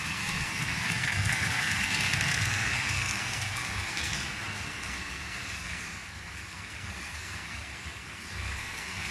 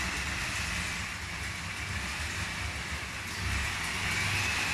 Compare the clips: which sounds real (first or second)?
second